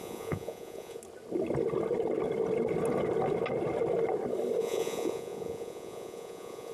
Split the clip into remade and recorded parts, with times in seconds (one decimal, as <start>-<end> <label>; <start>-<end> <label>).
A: 0.0-1.0 remade; 1.0-4.6 recorded; 4.6-6.7 remade